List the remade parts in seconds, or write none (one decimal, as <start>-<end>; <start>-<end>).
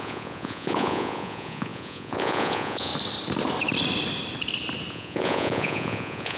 0.0-2.9; 4.9-6.4